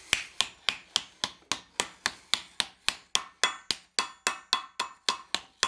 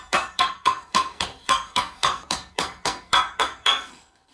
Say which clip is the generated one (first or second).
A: second